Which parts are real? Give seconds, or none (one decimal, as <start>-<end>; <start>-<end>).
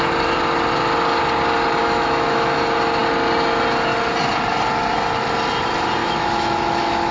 0.0-1.8; 2.6-6.0